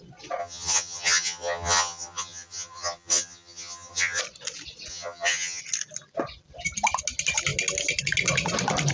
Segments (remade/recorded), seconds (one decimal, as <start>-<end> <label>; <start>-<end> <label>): 0.0-0.4 recorded; 0.4-4.2 remade; 4.2-4.9 recorded; 4.9-5.6 remade; 5.6-8.9 recorded